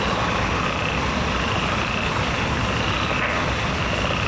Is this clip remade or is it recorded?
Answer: recorded